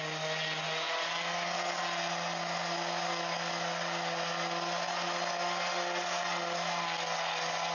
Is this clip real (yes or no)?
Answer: yes